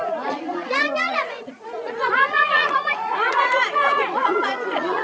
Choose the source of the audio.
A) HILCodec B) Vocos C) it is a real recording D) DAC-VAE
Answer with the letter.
B